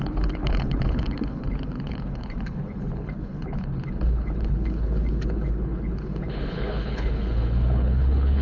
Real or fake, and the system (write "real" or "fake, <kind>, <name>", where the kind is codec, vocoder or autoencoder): fake, codec, HILCodec